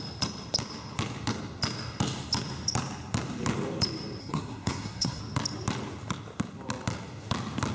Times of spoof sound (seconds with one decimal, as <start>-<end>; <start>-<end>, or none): 4.2-5.2